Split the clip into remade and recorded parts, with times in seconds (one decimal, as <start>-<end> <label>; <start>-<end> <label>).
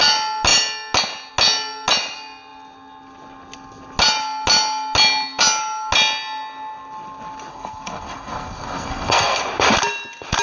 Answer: 0.0-7.5 recorded; 7.5-9.4 remade; 9.4-10.4 recorded